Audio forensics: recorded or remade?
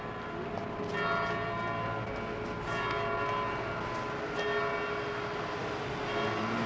recorded